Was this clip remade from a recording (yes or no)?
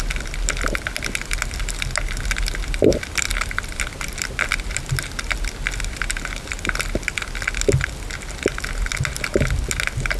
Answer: no